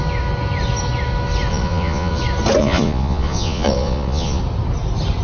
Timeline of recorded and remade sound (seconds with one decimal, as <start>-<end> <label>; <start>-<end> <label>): 0.0-1.5 recorded; 1.5-2.2 remade; 2.2-2.6 recorded; 2.6-4.4 remade; 4.4-5.2 recorded